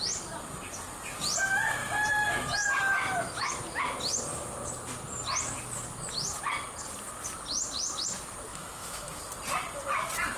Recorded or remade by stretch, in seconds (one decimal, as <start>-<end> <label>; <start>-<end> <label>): 0.0-1.8 recorded; 1.8-3.5 remade; 3.5-8.5 recorded; 8.5-9.2 remade; 9.2-10.4 recorded